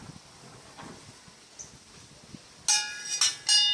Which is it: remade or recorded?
recorded